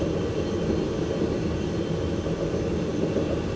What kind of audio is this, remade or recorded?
recorded